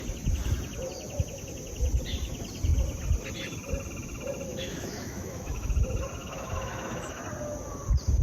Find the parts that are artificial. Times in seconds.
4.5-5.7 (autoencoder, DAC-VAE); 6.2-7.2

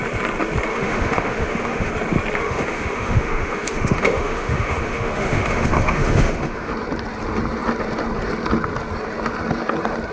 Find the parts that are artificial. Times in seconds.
0.7-1.9 (autoencoder, DAC-VAE); 2.4-6.7

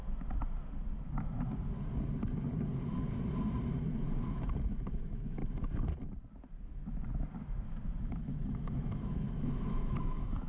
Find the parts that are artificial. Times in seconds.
5.0-5.4 (autoencoder, DAC-VAE); 8.0-10.5

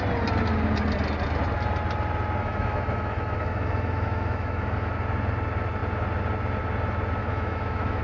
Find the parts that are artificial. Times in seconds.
2.4-4.9 (autoencoder, DAC-VAE); 7.2-8.0

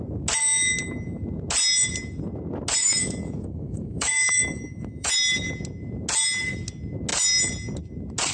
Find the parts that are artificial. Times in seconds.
2.8-5.1 (autoencoder, DAC-VAE)